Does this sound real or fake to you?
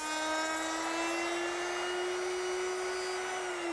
real